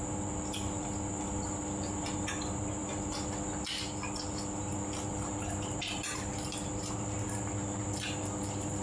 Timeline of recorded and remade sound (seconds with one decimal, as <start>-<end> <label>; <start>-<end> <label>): 0.0-8.8 recorded